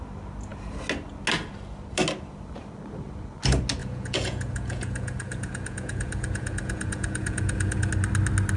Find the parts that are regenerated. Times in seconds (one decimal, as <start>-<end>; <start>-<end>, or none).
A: 3.8-7.9